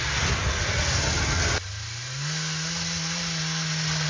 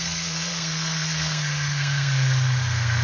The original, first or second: first